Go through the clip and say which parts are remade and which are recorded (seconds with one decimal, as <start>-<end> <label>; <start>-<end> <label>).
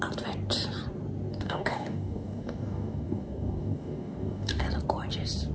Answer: 0.0-1.3 recorded; 1.3-4.6 remade; 4.6-5.5 recorded